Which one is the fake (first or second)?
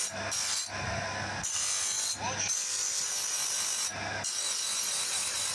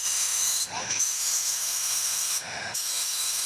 second